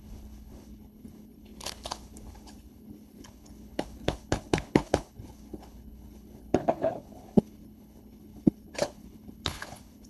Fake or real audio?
fake